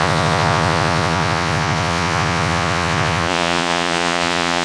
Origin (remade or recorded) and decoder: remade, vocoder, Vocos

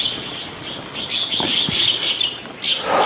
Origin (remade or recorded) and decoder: recorded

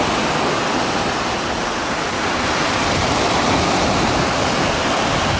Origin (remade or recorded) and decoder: recorded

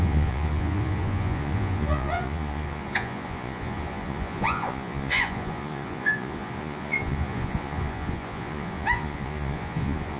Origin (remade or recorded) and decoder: remade, vocoder, Vocos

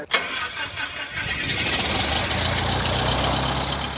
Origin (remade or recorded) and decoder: recorded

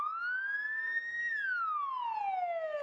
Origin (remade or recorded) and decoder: recorded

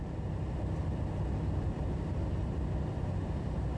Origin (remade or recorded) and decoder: recorded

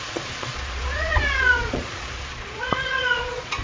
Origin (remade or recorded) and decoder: remade, vocoder, Vocos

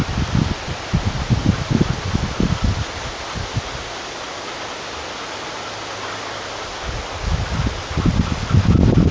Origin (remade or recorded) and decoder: recorded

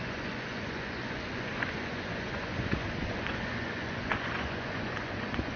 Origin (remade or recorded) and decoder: remade, vocoder, Vocos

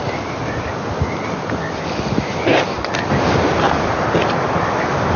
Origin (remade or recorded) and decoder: recorded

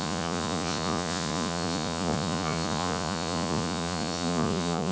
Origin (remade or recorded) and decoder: remade, vocoder, Vocos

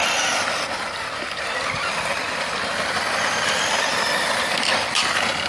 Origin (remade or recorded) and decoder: recorded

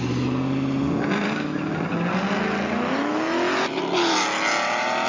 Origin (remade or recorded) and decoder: recorded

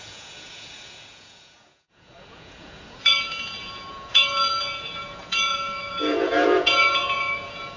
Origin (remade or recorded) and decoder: remade, vocoder, Vocos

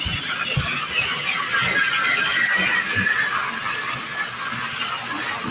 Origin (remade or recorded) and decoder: recorded